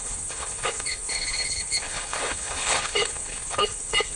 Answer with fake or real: fake